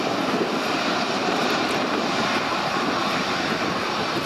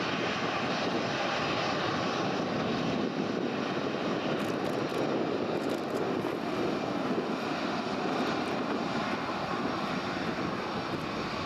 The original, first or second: second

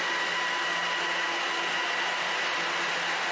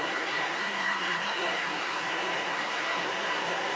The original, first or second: first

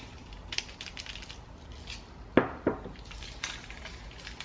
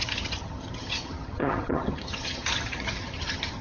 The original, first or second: first